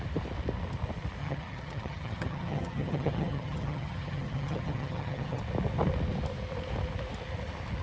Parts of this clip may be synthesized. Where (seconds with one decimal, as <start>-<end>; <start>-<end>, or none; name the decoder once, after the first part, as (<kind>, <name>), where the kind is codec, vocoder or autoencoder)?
1.2-5.4 (vocoder, HiFi-GAN)